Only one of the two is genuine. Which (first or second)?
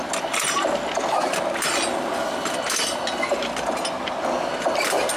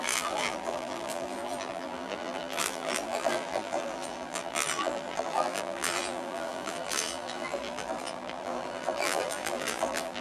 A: first